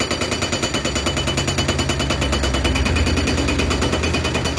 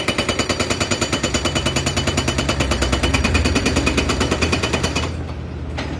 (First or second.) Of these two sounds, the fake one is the second